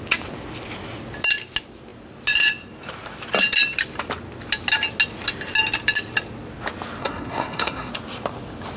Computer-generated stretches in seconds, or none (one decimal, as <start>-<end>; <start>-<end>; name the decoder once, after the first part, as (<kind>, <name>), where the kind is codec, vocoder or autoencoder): 7.0-7.9 (codec, SNAC)